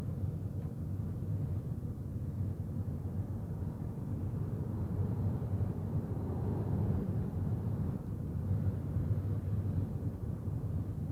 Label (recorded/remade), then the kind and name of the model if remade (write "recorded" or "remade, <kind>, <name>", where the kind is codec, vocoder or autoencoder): remade, vocoder, BigVGAN v2